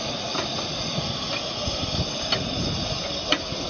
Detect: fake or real real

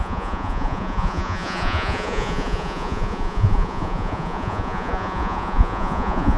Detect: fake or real fake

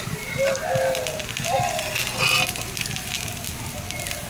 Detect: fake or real real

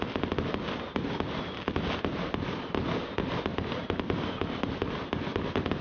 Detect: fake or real real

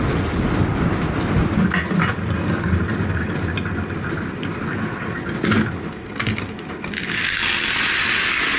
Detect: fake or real real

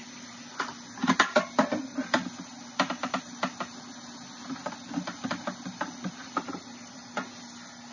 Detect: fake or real real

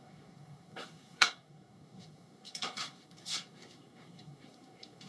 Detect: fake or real fake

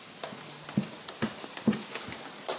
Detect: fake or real real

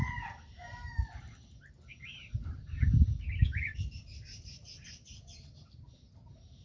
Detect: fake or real fake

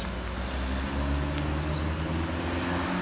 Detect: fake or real real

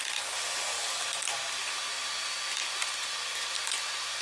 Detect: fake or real real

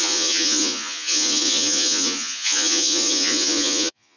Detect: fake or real fake